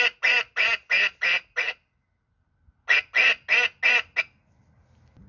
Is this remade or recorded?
recorded